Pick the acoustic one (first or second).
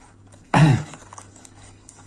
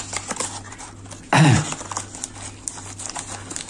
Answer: second